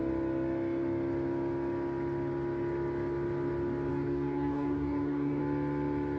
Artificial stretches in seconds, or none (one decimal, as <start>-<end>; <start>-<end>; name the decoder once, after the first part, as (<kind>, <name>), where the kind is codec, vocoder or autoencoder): 3.9-5.4 (codec, DAC)

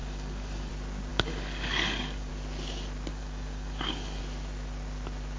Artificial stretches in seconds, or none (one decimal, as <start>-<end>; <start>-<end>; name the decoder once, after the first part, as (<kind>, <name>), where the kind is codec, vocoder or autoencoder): 0.0-0.7 (codec, DAC); 1.1-2.3; 3.1-4.2